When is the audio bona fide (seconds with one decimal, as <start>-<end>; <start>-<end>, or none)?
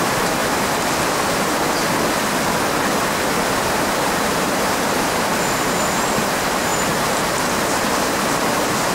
0.4-3.6; 6.7-7.7